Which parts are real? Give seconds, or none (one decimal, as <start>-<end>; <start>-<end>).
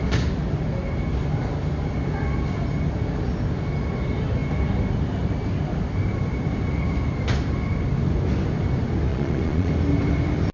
0.0-9.1; 9.7-10.5